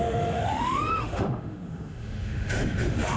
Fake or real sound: fake